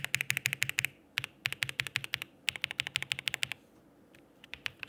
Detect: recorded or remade recorded